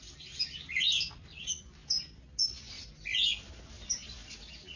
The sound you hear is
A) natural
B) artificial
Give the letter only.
A